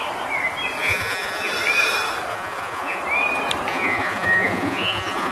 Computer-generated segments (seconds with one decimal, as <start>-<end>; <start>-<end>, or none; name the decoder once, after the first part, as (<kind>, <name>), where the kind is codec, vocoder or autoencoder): 0.8-1.5 (vocoder, Vocos); 2.3-3.0; 3.7-5.3